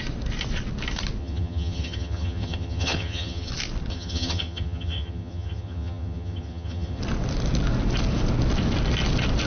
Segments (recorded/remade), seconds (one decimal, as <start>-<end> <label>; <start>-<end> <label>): 0.0-1.2 recorded; 1.2-3.5 remade; 3.5-3.9 recorded; 3.9-7.0 remade; 7.0-9.5 recorded

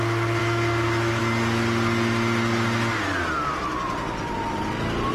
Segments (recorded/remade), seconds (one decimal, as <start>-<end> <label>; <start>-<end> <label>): 0.0-0.4 recorded; 0.4-1.2 remade; 1.2-5.1 recorded

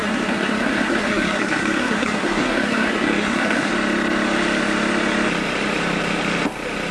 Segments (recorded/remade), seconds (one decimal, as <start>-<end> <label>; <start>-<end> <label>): 0.0-3.7 remade; 3.7-6.9 recorded

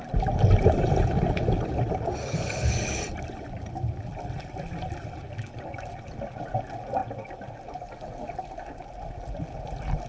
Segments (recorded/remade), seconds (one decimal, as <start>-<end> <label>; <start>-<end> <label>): 0.0-2.2 recorded; 2.2-2.7 remade; 2.7-10.1 recorded

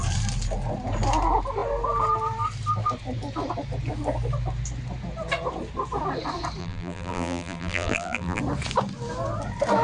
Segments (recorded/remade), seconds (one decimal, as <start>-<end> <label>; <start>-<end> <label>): 0.0-6.6 recorded; 6.6-8.4 remade; 8.4-9.8 recorded

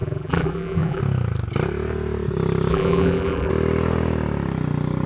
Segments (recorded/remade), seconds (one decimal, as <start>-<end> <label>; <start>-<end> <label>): 0.0-1.0 remade; 1.0-2.7 recorded; 2.7-3.5 remade; 3.5-5.1 recorded